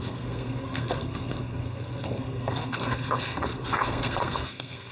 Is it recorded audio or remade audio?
remade